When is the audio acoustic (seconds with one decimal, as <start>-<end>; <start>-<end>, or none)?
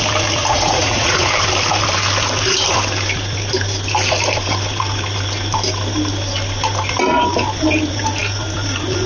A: 0.0-0.4; 1.3-9.1